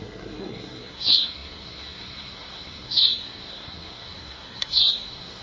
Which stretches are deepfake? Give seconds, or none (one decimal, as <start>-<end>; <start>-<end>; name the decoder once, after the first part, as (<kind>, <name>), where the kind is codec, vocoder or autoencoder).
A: 0.0-5.4 (codec, SNAC)